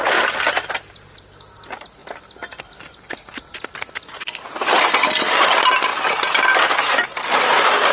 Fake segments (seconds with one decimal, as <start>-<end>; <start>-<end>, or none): 0.0-2.0; 5.4-7.9